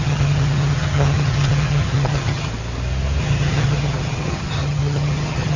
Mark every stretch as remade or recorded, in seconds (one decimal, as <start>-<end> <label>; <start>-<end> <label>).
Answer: 0.0-2.5 remade; 2.5-3.2 recorded; 3.2-5.6 remade